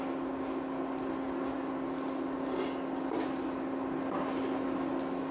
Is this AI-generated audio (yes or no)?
no